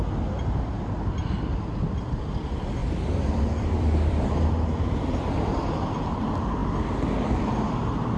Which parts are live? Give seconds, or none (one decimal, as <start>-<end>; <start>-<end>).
0.0-2.8; 4.5-8.2